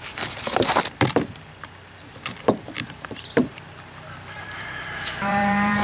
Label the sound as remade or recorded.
remade